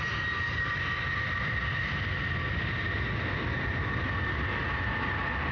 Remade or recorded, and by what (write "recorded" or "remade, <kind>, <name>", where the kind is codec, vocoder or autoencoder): recorded